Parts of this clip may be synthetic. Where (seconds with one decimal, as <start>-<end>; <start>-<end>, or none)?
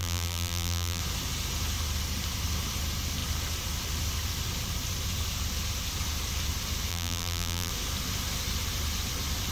0.0-1.0; 6.9-7.7